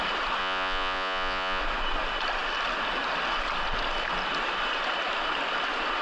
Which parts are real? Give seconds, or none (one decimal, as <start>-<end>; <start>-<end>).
0.0-0.4; 1.6-6.0